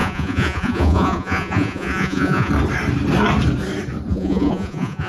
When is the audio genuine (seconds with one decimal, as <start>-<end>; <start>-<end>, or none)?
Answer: 2.5-4.1

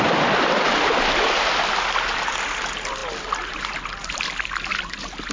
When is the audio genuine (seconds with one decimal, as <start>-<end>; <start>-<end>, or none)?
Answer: 0.0-5.3

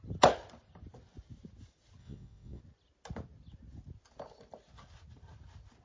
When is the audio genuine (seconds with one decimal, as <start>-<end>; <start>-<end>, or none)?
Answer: 0.0-2.0; 2.6-5.8

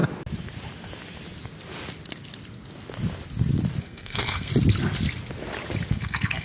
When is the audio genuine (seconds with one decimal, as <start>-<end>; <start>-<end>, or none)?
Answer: 0.0-3.8; 4.5-5.9

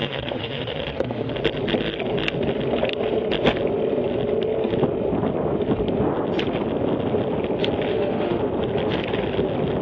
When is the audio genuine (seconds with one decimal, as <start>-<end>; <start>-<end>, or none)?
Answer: 1.3-7.9; 8.4-9.8

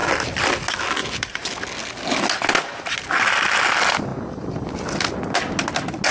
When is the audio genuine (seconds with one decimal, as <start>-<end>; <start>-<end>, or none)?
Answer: 0.5-1.0; 1.6-4.1; 5.3-6.1

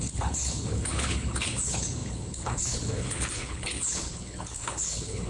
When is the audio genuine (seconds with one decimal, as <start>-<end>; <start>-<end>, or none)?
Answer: none